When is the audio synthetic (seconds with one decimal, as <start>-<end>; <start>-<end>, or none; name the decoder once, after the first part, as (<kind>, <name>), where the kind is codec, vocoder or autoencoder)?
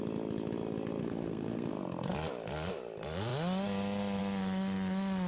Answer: 1.0-1.7 (codec, SNAC)